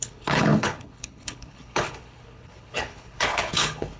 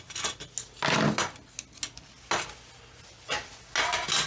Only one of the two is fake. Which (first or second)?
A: first